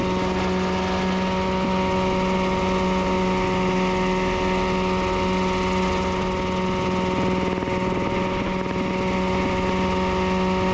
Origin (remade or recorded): recorded